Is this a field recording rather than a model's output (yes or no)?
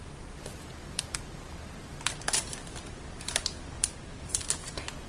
no